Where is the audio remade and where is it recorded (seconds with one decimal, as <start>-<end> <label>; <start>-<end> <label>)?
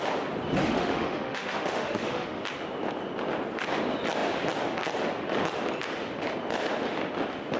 0.0-0.6 recorded; 0.6-2.4 remade; 2.4-7.6 recorded